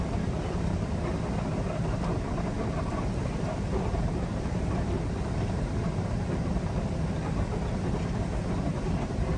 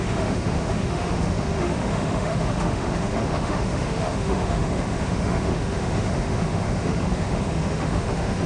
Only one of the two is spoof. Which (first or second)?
second